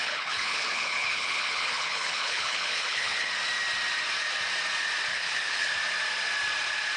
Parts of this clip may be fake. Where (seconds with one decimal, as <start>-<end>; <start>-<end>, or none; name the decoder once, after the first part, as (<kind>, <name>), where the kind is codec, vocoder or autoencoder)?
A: 0.0-3.3 (codec, HILCodec); 5.1-5.7